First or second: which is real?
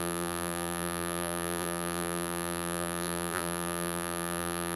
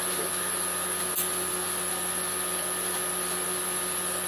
second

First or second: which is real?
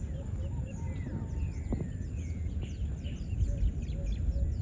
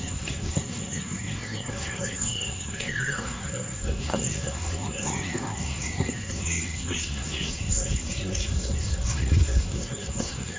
first